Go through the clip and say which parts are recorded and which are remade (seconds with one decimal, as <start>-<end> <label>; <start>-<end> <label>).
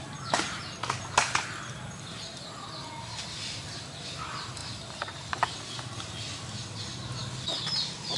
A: 0.0-8.2 recorded